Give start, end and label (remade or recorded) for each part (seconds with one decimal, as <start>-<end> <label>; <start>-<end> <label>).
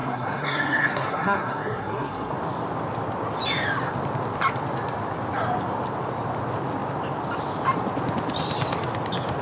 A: 0.0-2.3 remade; 2.3-9.4 recorded